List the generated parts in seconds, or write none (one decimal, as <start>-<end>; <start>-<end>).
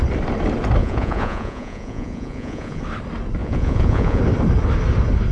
0.8-2.8; 3.4-4.2